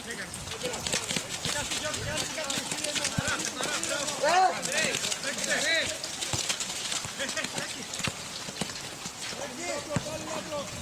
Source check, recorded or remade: recorded